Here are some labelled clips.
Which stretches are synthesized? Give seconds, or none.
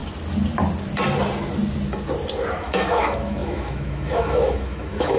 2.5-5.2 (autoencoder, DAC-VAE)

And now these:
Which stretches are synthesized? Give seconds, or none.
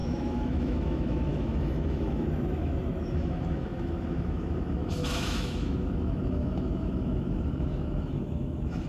0.0-8.9 (autoencoder, DAC-VAE)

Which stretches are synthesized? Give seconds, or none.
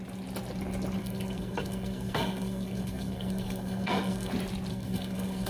1.0-4.3 (codec, SNAC); 4.7-5.5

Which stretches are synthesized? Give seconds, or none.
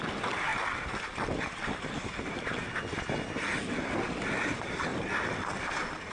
0.0-0.5 (vocoder, BigVGAN v2); 4.2-6.1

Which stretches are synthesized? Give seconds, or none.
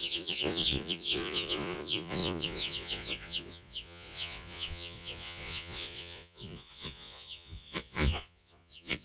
0.0-9.0 (vocoder, Vocos)